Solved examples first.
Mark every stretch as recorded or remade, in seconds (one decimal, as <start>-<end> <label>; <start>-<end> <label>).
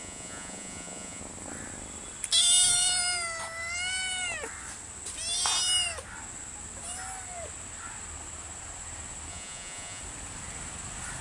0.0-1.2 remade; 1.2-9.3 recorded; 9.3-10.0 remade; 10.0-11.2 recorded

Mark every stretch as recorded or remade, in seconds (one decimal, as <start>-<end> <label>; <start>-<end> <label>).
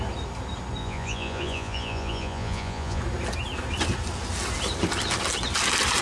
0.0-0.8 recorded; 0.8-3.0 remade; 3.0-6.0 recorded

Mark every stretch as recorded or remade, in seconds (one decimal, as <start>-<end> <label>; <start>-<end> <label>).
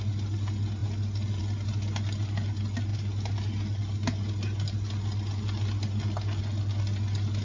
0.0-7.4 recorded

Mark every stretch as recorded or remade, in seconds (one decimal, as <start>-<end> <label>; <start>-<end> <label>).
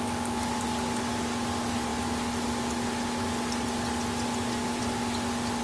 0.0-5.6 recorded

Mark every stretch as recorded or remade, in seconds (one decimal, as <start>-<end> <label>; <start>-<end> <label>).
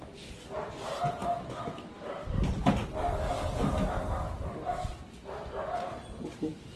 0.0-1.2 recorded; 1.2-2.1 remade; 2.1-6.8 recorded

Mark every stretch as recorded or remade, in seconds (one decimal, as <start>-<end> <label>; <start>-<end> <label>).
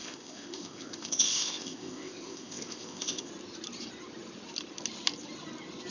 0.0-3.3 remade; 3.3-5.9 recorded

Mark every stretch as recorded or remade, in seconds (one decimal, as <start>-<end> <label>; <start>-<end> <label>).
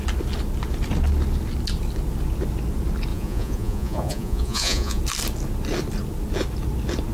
0.0-3.1 recorded; 3.1-5.0 remade; 5.0-7.1 recorded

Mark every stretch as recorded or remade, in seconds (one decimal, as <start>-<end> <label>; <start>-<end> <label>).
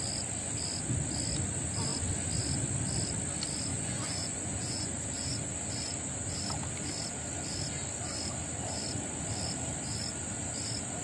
0.0-3.7 recorded; 3.7-4.9 remade; 4.9-11.0 recorded